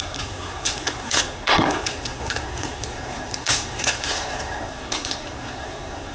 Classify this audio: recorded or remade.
remade